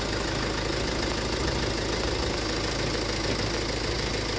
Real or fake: real